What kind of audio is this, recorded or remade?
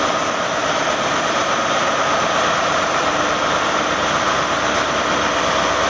recorded